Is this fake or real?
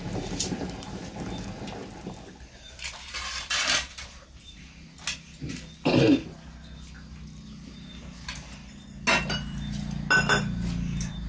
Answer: real